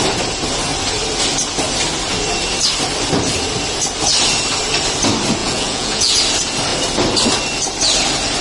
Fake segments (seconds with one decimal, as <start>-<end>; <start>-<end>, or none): 5.4-6.2